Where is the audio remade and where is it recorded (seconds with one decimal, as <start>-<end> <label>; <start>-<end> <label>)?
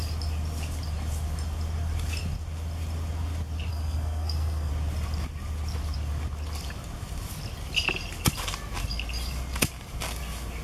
0.0-3.7 recorded; 3.7-4.7 remade; 4.7-10.6 recorded